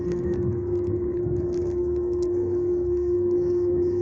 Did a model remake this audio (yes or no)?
yes